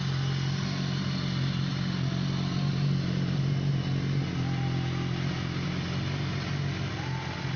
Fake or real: real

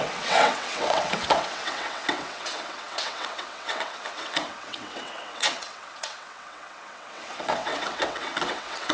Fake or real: fake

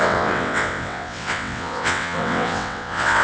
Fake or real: fake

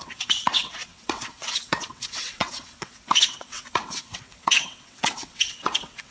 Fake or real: fake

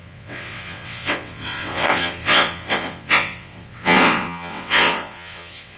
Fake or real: fake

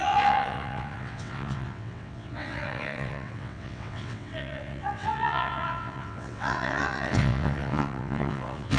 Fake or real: fake